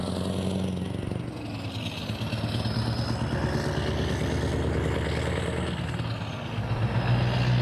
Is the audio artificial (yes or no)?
no